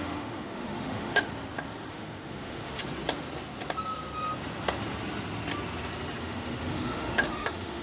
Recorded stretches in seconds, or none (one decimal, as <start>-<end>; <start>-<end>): 1.3-1.9; 2.8-6.2